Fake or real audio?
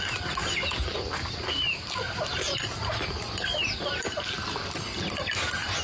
real